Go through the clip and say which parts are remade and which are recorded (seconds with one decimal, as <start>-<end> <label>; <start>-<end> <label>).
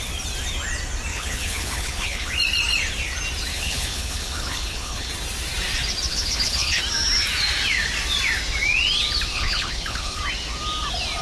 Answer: 0.0-1.1 recorded; 1.1-2.3 remade; 2.3-3.5 recorded; 3.5-5.1 remade; 5.1-6.1 recorded; 6.1-6.8 remade; 6.8-9.3 recorded; 9.3-10.2 remade; 10.2-11.2 recorded